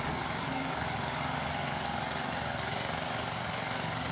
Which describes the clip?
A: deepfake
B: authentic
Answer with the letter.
A